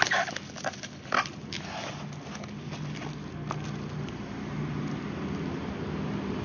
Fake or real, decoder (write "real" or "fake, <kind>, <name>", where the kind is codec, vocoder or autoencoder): real